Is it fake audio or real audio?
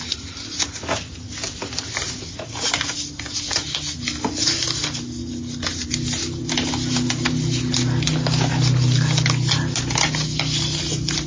real